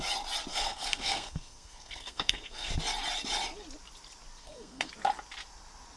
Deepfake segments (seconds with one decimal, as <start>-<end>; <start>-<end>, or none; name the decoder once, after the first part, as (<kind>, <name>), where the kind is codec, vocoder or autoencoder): 0.5-2.7 (codec, SNAC); 4.4-4.9